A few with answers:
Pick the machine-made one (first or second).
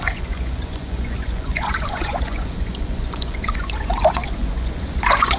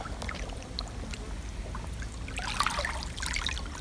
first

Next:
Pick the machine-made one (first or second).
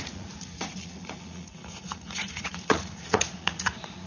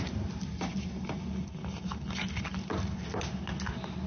first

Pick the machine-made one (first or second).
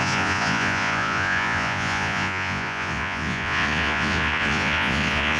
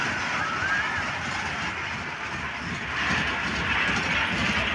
first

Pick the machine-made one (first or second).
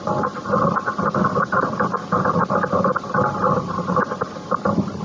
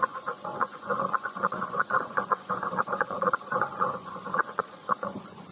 second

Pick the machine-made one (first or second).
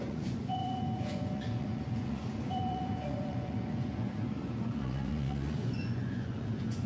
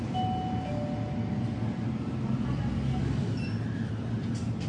first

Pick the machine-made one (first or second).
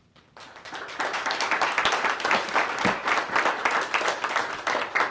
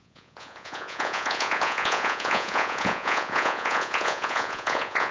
second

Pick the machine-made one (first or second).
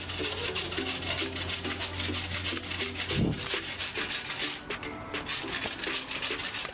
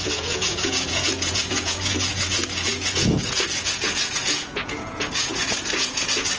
second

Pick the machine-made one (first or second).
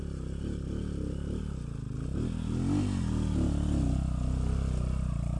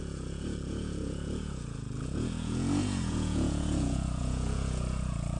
second